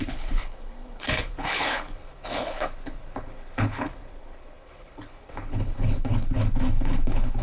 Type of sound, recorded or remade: remade